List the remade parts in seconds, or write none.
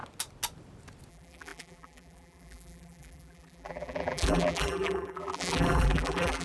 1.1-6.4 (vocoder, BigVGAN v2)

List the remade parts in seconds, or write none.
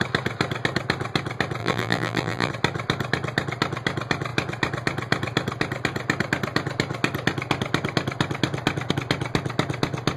1.6-2.5 (vocoder, BigVGAN v2)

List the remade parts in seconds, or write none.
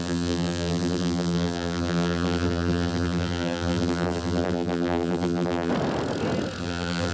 0.0-5.7 (vocoder, BigVGAN v2); 6.6-7.1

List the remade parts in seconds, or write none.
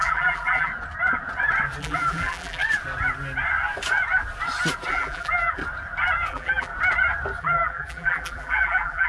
0.0-0.7 (vocoder, BigVGAN v2); 1.8-2.6; 4.9-5.6; 6.3-6.7; 7.4-9.1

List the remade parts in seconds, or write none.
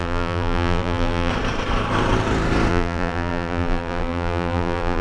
0.0-1.3 (vocoder, BigVGAN v2); 2.7-5.0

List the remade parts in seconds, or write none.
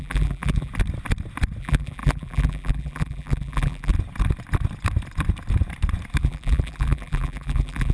0.0-0.7 (vocoder, BigVGAN v2); 1.6-3.9; 6.2-7.9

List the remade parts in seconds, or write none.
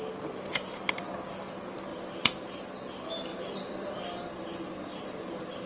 1.9-2.6 (vocoder, BigVGAN v2); 3.3-5.7